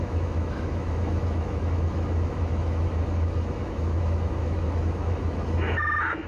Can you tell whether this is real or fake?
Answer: fake